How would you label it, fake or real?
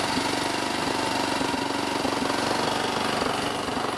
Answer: real